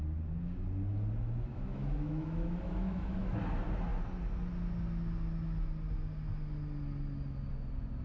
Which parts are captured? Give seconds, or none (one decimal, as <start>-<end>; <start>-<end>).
0.0-1.5; 3.4-8.0